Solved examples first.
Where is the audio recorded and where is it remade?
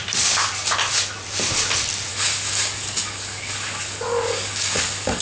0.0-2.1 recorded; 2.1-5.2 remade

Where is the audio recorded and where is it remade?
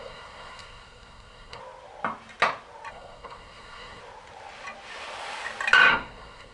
0.0-1.6 remade; 1.6-2.9 recorded; 2.9-4.0 remade; 4.0-5.9 recorded; 5.9-6.5 remade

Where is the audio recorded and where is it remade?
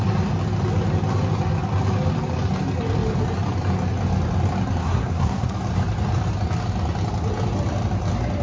0.0-4.8 recorded; 4.8-5.5 remade; 5.5-8.4 recorded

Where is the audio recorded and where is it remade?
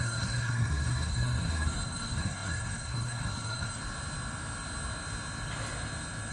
0.0-3.8 remade; 3.8-6.3 recorded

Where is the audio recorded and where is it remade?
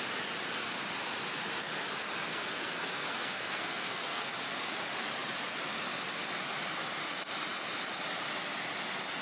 0.0-2.3 recorded; 2.3-4.3 remade; 4.3-9.2 recorded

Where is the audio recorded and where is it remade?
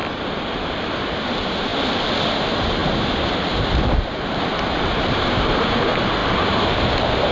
0.0-0.6 recorded; 0.6-1.7 remade; 1.7-2.3 recorded; 2.3-7.3 remade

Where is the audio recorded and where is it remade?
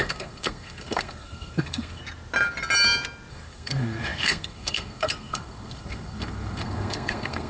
0.0-2.0 remade; 2.0-3.3 recorded; 3.3-7.5 remade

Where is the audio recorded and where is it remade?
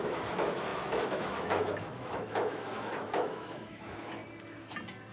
0.0-4.2 remade; 4.2-5.1 recorded